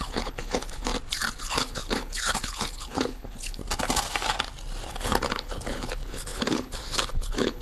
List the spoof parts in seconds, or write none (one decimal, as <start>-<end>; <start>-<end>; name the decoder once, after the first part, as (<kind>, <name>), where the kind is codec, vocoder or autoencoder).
0.0-0.9 (codec, HILCodec); 1.4-3.6; 4.9-7.6